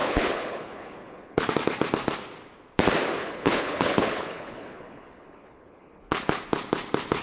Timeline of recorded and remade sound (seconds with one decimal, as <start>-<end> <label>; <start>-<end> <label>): 0.0-1.5 remade; 1.5-3.2 recorded; 3.2-6.4 remade; 6.4-7.2 recorded